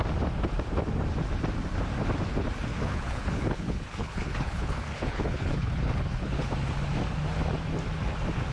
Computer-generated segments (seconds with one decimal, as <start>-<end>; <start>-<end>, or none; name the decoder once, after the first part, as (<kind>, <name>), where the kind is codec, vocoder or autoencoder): 2.7-6.5 (codec, HILCodec)

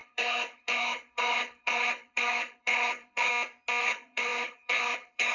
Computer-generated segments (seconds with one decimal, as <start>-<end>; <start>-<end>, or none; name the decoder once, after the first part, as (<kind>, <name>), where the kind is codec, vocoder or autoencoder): 0.0-3.3 (codec, HILCodec); 3.8-5.3